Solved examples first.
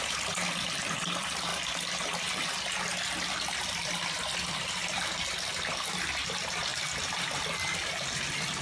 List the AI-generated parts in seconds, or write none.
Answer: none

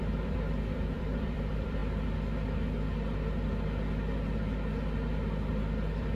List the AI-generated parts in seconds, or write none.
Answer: 0.0-1.8; 5.5-6.2

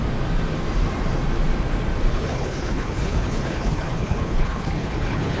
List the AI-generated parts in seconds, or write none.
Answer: 2.1-5.4

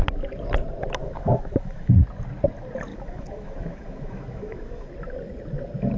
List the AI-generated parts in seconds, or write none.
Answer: 1.0-1.9; 2.9-4.9